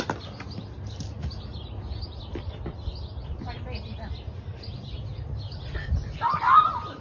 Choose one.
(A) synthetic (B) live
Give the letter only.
B